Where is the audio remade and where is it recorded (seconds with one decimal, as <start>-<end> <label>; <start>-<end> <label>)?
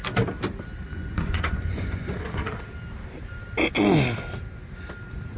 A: 0.0-0.9 recorded; 0.9-2.6 remade; 2.6-5.4 recorded